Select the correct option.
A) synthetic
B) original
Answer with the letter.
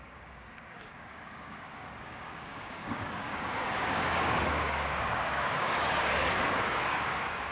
A